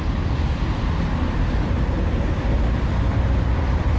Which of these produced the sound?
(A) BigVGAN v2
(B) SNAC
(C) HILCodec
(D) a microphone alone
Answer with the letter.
D